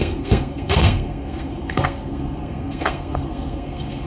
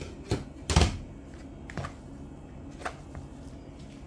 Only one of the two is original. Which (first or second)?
second